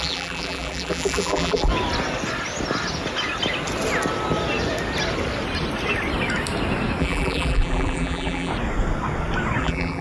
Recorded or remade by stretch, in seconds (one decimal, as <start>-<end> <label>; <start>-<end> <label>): 0.0-1.7 remade; 1.7-7.0 recorded; 7.0-8.5 remade; 8.5-9.6 recorded; 9.6-10.0 remade